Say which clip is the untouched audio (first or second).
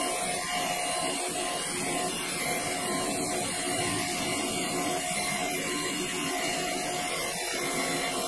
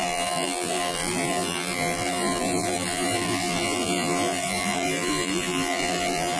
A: first